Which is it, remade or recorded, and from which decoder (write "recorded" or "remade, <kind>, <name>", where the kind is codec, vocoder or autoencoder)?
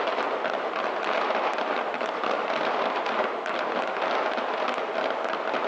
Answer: recorded